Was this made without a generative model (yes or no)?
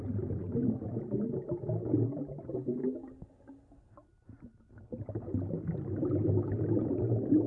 yes